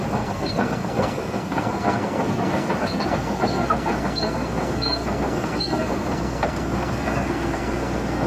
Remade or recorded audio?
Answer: remade